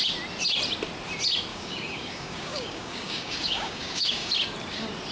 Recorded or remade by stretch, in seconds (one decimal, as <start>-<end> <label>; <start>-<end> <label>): 0.0-1.5 recorded; 1.5-4.3 remade; 4.3-5.1 recorded